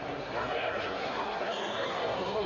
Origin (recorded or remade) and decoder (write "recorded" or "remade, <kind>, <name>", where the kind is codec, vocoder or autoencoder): remade, codec, SNAC